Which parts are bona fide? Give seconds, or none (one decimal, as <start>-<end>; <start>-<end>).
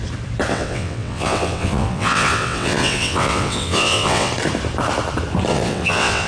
0.0-0.5; 4.3-5.5